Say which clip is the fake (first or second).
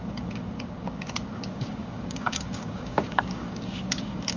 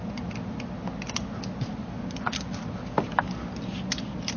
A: first